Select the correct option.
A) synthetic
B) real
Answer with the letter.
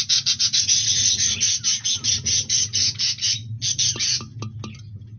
B